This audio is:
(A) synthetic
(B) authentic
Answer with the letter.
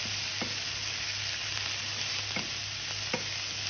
B